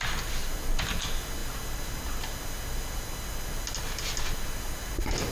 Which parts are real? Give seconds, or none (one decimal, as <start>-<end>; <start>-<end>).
0.0-5.3